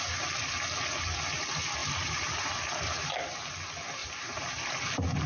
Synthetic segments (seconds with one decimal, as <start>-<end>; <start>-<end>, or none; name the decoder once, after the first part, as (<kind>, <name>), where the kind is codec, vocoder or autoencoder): 1.8-2.5 (vocoder, BigVGAN v2); 4.0-4.8